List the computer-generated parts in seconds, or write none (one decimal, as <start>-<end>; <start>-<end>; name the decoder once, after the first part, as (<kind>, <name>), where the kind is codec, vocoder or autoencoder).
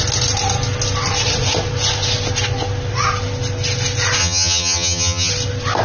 4.2-5.3 (vocoder, HiFi-GAN)